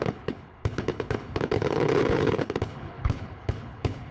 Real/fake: fake